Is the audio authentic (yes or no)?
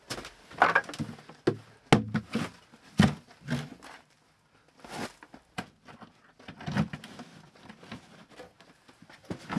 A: yes